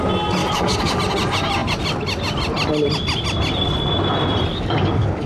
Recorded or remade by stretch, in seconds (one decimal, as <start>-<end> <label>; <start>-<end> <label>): 0.0-0.4 recorded; 0.4-1.0 remade; 1.0-4.5 recorded; 4.5-5.3 remade